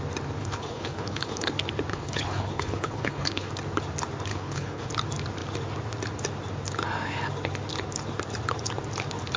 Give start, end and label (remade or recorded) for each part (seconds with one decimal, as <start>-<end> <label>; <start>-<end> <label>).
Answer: 0.0-0.4 recorded; 0.4-1.5 remade; 1.5-1.9 recorded; 1.9-3.5 remade; 3.5-4.3 recorded; 4.3-4.9 remade; 4.9-9.4 recorded